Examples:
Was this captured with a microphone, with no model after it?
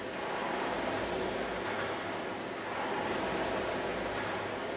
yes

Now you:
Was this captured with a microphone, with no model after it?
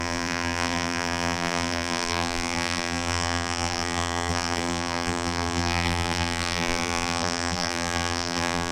no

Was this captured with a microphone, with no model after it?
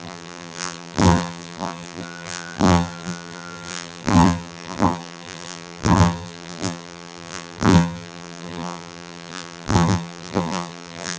no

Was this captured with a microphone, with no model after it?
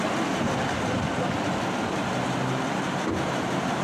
yes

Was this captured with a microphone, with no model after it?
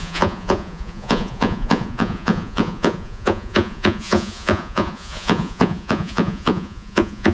no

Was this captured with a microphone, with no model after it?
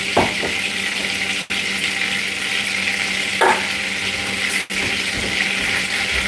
yes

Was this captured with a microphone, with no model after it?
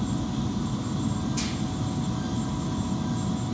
yes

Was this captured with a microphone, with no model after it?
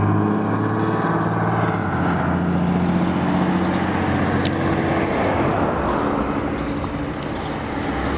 yes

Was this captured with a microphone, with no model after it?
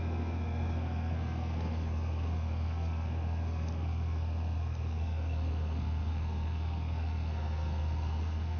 no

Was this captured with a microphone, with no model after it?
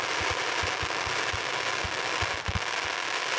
yes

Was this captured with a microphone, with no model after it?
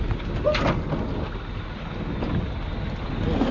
yes